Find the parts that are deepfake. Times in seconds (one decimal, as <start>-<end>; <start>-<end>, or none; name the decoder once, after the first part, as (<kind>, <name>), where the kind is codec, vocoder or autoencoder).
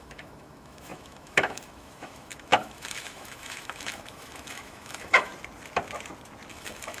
0.0-5.3 (autoencoder, DAC-VAE); 6.5-7.0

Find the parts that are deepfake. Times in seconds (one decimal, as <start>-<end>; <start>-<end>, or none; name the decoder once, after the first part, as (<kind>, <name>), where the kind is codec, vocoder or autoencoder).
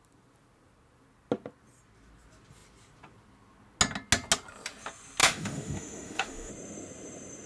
5.2-6.5 (autoencoder, DAC-VAE)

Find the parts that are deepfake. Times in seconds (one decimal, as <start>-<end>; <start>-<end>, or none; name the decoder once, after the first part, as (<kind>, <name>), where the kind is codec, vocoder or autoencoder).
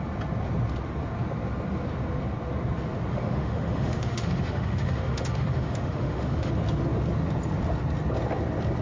3.1-6.5 (autoencoder, DAC-VAE)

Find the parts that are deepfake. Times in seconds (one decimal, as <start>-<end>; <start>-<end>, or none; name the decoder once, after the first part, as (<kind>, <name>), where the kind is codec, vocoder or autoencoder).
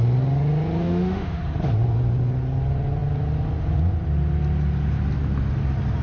0.8-1.4 (autoencoder, DAC-VAE)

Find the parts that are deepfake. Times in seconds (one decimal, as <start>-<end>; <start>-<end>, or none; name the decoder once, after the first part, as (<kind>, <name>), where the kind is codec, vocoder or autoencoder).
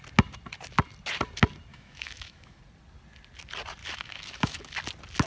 1.7-2.6 (autoencoder, DAC-VAE); 3.8-4.7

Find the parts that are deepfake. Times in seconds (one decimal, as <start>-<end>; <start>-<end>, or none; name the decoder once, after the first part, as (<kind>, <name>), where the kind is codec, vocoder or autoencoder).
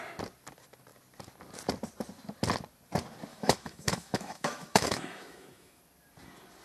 3.3-5.8 (autoencoder, DAC-VAE)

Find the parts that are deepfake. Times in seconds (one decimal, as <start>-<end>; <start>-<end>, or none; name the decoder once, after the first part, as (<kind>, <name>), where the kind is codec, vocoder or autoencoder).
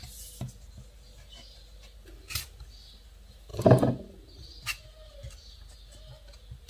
none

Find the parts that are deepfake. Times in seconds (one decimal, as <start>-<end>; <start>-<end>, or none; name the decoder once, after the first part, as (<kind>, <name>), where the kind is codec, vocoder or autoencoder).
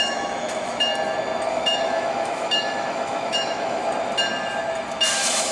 0.0-0.9 (autoencoder, DAC-VAE); 1.5-3.8; 5.1-5.5